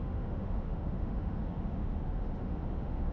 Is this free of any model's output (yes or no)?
no